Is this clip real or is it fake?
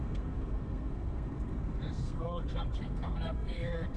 fake